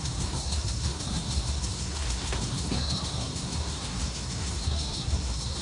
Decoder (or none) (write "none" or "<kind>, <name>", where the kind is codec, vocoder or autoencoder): codec, SNAC